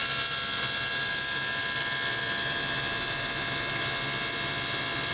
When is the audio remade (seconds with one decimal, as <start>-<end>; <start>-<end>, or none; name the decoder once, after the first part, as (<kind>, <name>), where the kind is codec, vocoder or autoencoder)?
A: none